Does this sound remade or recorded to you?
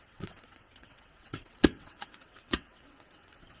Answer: remade